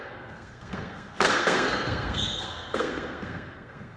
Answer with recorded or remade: remade